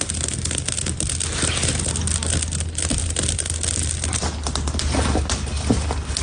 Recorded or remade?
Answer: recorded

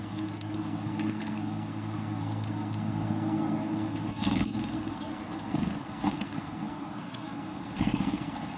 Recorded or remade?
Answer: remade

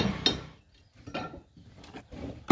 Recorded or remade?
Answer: recorded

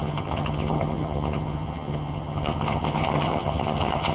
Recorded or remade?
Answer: remade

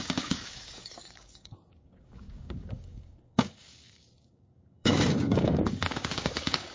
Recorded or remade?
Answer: remade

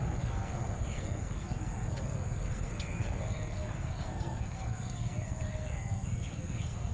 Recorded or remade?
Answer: remade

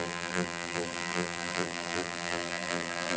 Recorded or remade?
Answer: remade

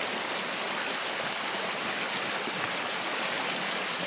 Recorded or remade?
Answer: recorded